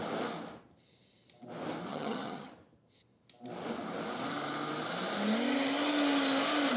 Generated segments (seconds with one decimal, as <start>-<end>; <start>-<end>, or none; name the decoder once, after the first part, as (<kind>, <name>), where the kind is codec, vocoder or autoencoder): 1.9-2.5 (vocoder, HiFi-GAN)